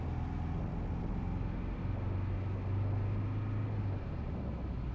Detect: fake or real real